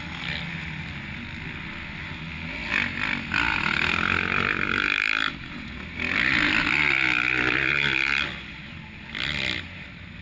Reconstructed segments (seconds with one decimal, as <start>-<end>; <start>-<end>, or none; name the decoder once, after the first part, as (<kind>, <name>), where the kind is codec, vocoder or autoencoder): none